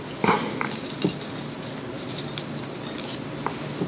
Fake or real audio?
real